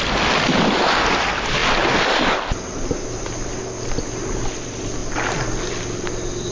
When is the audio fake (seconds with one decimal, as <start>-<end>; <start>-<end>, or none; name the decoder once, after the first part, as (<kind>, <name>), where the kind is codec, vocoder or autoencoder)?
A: none